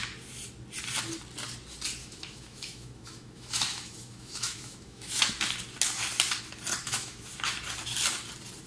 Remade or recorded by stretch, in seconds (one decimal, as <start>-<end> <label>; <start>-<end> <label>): 0.0-2.0 recorded; 2.0-5.3 remade; 5.3-6.8 recorded; 6.8-7.3 remade; 7.3-8.7 recorded